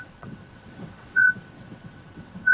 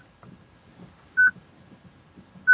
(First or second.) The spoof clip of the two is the first